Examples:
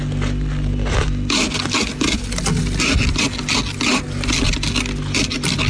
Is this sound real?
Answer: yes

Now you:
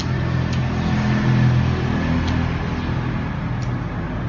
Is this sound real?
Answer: yes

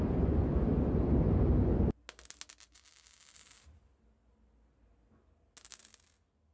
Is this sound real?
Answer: yes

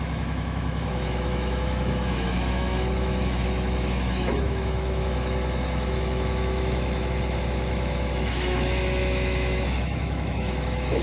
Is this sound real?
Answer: no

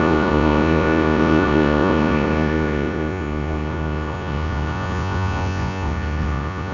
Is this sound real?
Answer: no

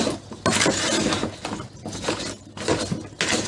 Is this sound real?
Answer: yes